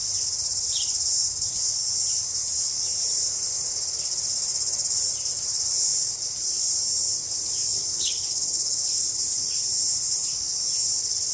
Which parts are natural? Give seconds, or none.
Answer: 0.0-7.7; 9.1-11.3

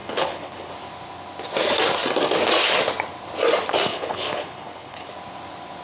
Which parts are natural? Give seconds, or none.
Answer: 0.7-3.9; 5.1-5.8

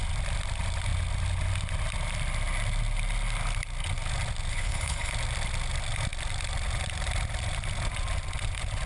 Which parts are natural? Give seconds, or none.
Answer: 0.0-4.5; 5.1-8.9

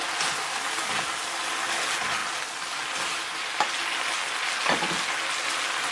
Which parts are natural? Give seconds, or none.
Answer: 0.0-5.9

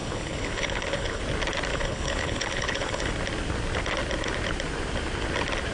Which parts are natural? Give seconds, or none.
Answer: 1.2-1.7; 3.1-5.7

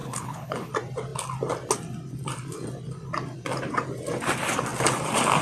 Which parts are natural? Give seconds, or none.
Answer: 0.7-5.4

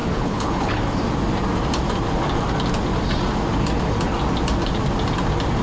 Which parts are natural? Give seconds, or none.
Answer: 0.8-5.6

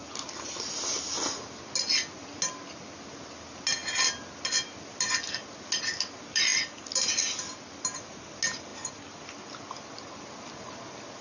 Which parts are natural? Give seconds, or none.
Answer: 0.0-11.2